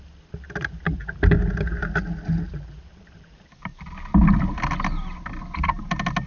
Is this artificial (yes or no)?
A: no